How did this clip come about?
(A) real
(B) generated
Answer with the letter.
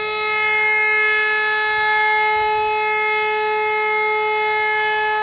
A